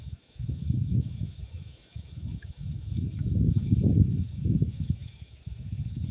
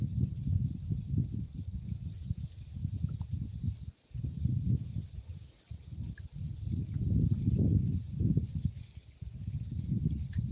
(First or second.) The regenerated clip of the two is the first